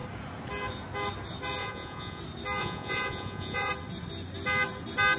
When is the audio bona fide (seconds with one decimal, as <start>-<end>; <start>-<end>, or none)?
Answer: 0.0-1.6; 2.2-2.6; 3.7-5.2